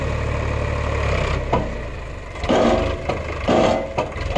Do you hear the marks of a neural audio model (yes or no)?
no